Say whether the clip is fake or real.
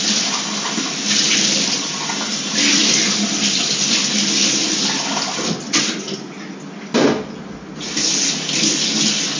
real